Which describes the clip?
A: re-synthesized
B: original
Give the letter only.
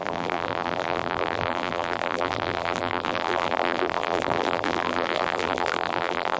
A